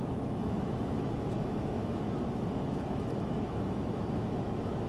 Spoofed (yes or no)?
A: yes